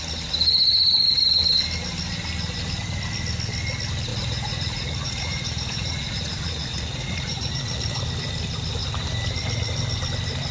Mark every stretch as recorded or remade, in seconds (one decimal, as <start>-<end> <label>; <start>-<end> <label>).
0.0-4.1 recorded; 4.1-8.0 remade; 8.0-10.5 recorded